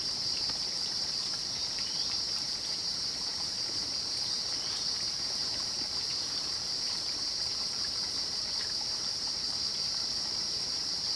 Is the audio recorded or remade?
remade